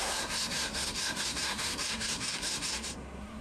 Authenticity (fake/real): fake